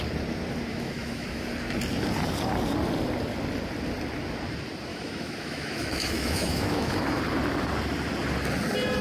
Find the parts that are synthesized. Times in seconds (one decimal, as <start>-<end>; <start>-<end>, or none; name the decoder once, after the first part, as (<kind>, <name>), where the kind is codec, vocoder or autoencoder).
0.7-1.4 (autoencoder, DAC-VAE); 4.9-7.2